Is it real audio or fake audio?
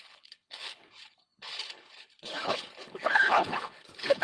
fake